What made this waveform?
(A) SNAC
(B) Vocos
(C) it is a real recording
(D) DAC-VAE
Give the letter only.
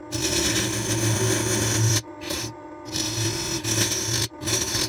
C